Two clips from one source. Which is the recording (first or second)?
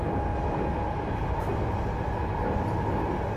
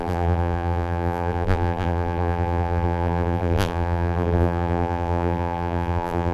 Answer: first